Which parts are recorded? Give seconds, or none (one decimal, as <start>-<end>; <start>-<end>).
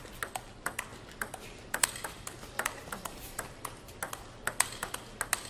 0.0-0.9; 3.8-5.5